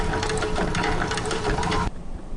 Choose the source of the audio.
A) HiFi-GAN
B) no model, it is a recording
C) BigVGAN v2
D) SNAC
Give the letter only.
C